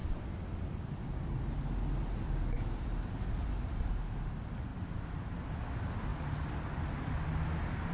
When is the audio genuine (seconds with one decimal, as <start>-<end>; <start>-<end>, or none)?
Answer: 0.0-7.9